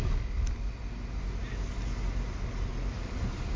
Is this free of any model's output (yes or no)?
yes